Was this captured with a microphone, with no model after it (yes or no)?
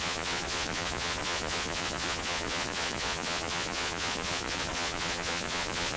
no